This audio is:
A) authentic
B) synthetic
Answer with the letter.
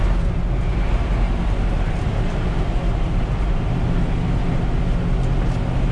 A